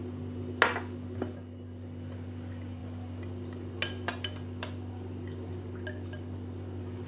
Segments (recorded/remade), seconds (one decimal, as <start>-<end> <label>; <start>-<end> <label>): 0.0-7.1 recorded